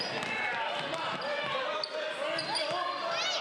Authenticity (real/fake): real